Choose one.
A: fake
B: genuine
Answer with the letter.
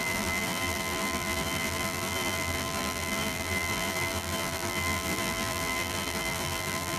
A